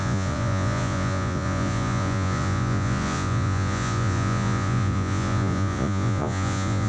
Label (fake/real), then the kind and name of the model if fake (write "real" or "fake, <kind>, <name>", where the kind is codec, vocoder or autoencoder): fake, vocoder, Vocos